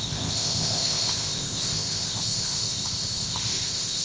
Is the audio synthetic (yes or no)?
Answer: yes